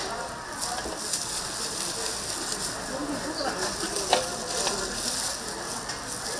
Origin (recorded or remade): recorded